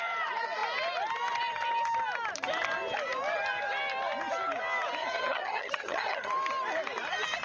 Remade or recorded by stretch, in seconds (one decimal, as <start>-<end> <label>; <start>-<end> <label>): 0.0-5.0 recorded; 5.0-6.3 remade; 6.3-7.4 recorded